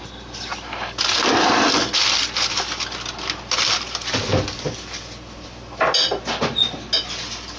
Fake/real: real